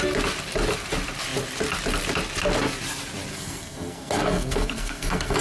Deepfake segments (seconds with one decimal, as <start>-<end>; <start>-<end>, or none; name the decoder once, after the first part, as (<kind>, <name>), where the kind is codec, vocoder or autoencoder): 3.3-5.4 (codec, SNAC)